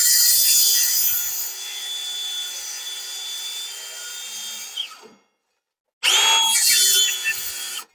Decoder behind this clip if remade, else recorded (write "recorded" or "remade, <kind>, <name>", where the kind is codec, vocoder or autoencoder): recorded